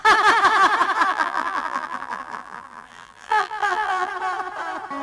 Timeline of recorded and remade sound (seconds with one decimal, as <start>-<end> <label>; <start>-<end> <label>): 0.0-1.1 recorded; 1.1-4.1 remade; 4.1-5.0 recorded